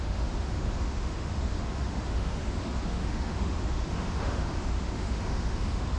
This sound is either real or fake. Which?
fake